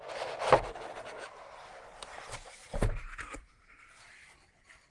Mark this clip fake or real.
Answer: real